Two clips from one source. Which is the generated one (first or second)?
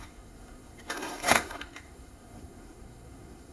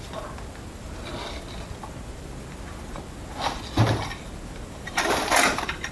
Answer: first